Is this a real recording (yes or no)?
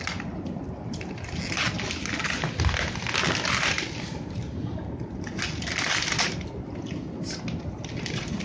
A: yes